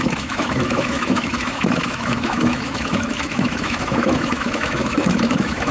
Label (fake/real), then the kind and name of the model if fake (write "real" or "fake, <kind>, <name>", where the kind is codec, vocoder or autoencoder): fake, autoencoder, DAC-VAE